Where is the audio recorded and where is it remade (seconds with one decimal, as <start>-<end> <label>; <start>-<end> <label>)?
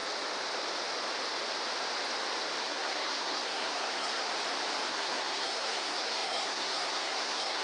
0.0-2.6 recorded; 2.6-4.3 remade; 4.3-4.9 recorded; 4.9-7.6 remade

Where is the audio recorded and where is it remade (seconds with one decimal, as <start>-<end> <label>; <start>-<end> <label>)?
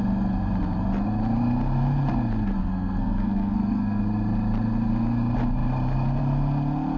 0.0-2.6 recorded; 2.6-4.0 remade; 4.0-7.0 recorded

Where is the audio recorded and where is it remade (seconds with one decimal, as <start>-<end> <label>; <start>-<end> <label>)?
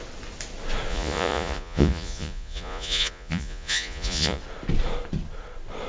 0.0-0.9 recorded; 0.9-4.4 remade; 4.4-5.9 recorded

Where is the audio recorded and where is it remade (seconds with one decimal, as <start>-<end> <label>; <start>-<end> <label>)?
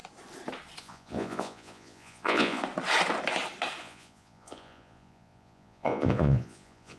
0.0-0.8 recorded; 0.8-2.6 remade; 2.6-3.8 recorded; 3.8-7.0 remade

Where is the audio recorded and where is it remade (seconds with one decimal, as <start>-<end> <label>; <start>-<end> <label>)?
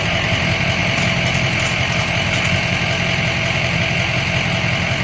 0.0-0.8 recorded; 0.8-3.8 remade; 3.8-5.0 recorded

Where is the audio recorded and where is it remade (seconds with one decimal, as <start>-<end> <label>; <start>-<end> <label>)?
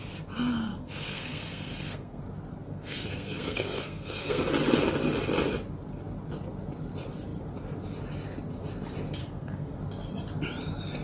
0.0-0.7 recorded; 0.7-2.2 remade; 2.2-2.7 recorded; 2.7-4.4 remade; 4.4-9.2 recorded; 9.2-9.8 remade; 9.8-11.0 recorded